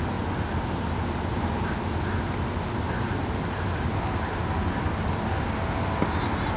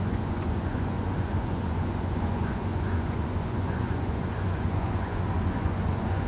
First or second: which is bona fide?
first